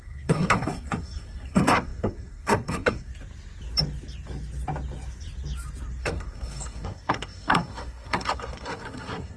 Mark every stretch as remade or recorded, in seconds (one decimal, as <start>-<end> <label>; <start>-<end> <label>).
0.0-3.1 remade; 3.1-6.0 recorded; 6.0-9.4 remade